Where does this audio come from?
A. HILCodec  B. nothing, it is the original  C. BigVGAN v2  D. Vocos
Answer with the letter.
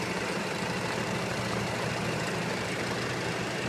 C